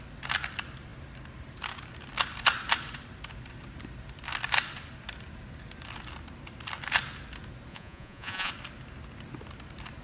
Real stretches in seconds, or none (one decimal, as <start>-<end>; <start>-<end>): 0.0-7.7; 8.5-10.0